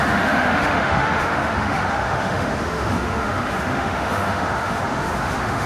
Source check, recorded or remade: remade